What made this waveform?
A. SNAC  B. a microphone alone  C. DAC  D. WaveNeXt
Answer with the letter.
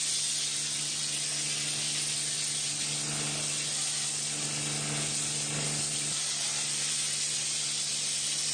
B